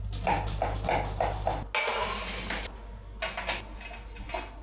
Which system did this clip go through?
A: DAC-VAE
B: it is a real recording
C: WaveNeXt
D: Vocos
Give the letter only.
B